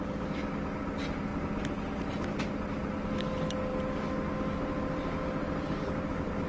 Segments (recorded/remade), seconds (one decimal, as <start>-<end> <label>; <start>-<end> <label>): 0.0-6.5 recorded